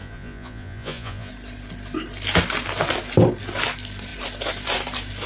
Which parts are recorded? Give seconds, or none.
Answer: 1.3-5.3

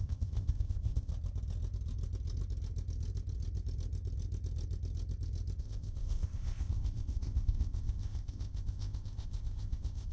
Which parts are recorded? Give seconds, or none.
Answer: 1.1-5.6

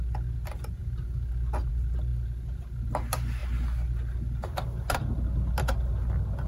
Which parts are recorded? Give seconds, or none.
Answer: 0.0-6.5

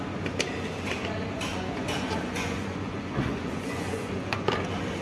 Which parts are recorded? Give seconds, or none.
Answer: 0.0-1.5; 4.5-5.0

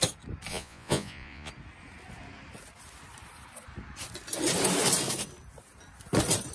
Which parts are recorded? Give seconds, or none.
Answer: 0.0-0.5; 1.5-6.5

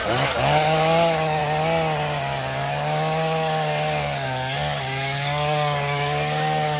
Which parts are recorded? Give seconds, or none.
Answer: 1.4-2.6

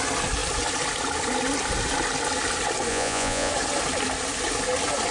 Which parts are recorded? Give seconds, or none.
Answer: 0.0-2.9; 3.5-5.1

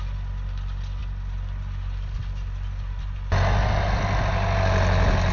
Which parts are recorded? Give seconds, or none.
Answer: 0.0-5.3